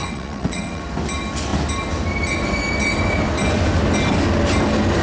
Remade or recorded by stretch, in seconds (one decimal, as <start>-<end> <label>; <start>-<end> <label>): 0.0-0.8 remade; 0.8-5.0 recorded